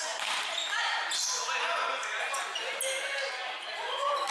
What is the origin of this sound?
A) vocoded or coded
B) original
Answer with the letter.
B